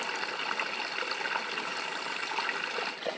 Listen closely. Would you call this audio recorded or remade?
recorded